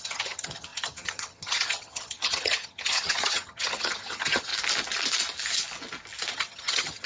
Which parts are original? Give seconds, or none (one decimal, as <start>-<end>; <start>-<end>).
4.5-6.3